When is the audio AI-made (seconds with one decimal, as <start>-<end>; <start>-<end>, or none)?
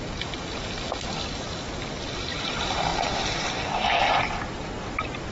none